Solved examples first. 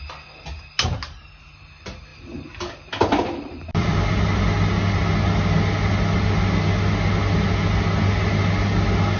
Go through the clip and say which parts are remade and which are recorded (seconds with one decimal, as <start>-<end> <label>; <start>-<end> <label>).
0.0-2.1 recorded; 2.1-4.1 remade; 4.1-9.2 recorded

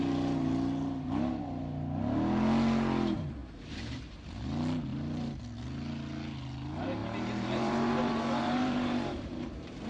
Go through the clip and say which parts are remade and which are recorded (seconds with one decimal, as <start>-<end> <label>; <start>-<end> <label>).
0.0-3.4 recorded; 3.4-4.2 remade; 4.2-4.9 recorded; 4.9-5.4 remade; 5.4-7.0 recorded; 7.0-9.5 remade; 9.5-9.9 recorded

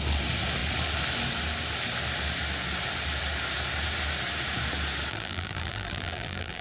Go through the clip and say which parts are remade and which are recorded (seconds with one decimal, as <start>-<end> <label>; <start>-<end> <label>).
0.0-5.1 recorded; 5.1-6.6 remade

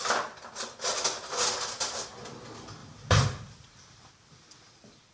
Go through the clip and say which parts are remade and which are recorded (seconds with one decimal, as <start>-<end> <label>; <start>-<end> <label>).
0.0-2.8 recorded; 2.8-4.1 remade; 4.1-5.1 recorded